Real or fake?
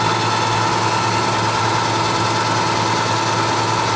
real